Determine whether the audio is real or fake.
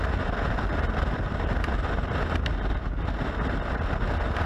real